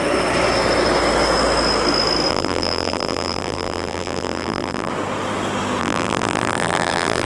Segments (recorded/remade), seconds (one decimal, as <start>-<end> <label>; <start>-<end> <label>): 0.0-2.3 recorded; 2.3-4.9 remade; 4.9-5.8 recorded; 5.8-7.3 remade